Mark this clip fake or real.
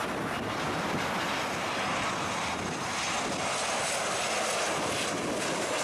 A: real